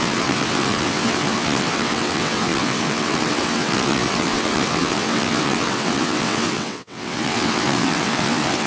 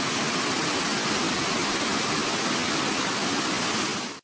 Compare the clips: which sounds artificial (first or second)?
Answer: first